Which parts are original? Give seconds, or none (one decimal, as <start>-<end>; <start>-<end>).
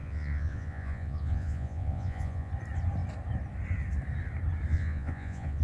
2.5-4.7